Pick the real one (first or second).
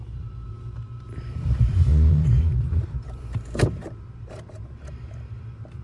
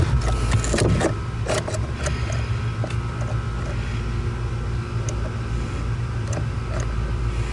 second